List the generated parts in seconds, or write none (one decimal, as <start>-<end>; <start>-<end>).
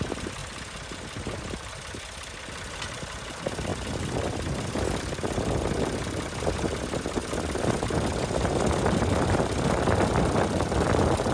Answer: none